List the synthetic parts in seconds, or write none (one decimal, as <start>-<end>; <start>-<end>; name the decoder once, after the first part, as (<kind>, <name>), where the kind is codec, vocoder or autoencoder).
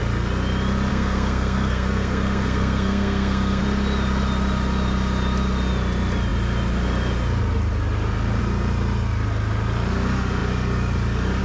0.9-3.6 (codec, SNAC)